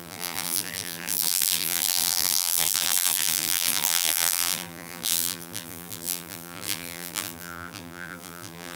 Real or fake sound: fake